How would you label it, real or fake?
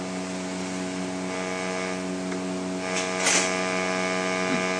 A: real